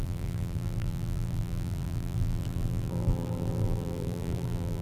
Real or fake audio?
fake